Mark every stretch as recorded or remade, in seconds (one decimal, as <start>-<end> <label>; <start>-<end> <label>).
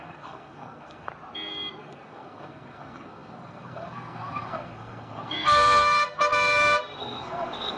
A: 0.0-1.1 remade; 1.1-1.8 recorded; 1.8-6.3 remade; 6.3-7.0 recorded; 7.0-7.8 remade